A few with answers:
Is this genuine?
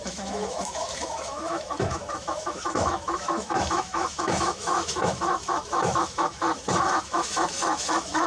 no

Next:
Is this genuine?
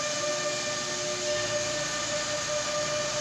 yes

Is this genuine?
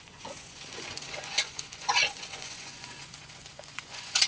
no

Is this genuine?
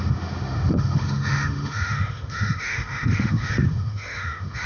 no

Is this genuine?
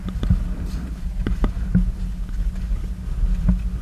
yes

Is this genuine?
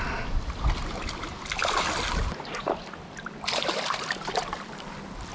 yes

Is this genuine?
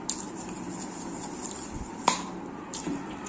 yes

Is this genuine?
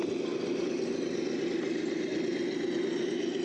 yes